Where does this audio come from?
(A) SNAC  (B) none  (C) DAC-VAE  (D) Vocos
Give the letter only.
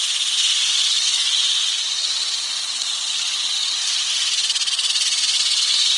B